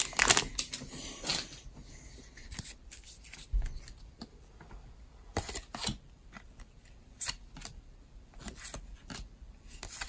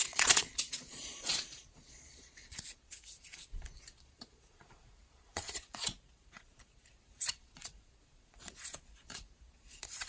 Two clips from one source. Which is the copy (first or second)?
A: second